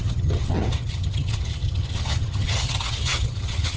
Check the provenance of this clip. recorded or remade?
remade